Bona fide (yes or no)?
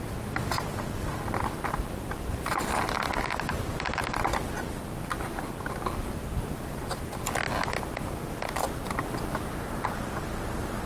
yes